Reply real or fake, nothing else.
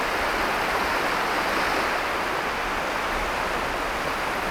real